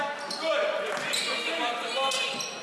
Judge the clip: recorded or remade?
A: recorded